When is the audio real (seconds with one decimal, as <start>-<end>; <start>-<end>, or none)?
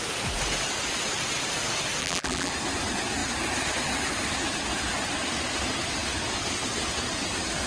0.0-2.0; 2.5-7.7